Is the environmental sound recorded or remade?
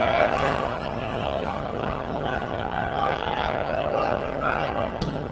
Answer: remade